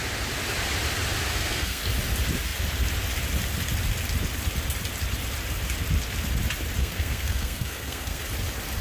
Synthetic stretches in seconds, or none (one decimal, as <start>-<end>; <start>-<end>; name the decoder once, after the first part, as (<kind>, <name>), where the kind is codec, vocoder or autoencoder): 1.3-1.8 (codec, SNAC); 6.8-8.2

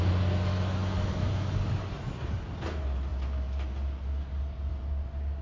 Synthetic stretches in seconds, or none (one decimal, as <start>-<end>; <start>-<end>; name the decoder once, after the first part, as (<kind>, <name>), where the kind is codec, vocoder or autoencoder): none

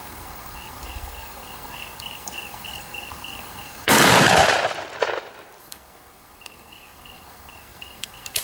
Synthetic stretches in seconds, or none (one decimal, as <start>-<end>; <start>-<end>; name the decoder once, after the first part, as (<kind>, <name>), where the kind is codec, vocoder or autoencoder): 0.0-4.1 (codec, SNAC); 5.6-8.4

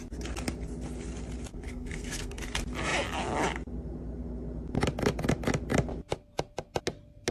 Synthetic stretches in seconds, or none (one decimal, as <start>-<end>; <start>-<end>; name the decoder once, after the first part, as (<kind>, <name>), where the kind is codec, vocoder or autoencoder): 1.5-2.4 (codec, SNAC)